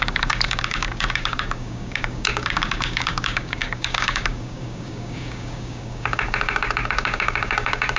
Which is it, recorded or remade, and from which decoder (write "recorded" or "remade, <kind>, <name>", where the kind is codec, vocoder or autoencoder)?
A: remade, codec, DAC